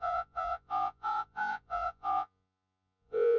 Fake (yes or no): yes